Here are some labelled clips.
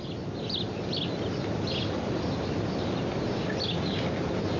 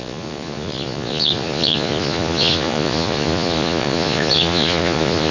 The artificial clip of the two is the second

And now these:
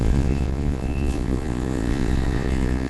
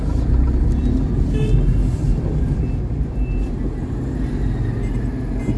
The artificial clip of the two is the first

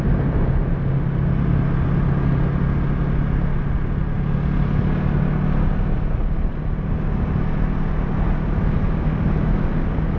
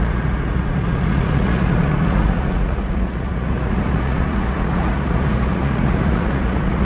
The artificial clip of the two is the second